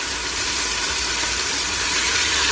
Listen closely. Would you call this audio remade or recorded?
remade